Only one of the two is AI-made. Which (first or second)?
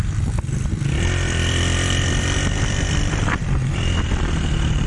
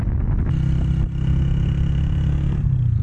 first